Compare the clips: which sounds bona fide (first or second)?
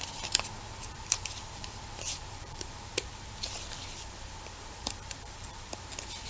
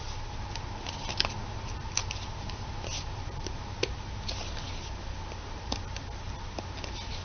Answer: second